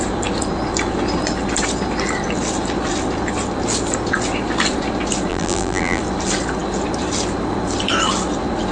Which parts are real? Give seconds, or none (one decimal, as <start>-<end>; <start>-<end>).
0.0-5.3; 6.0-8.7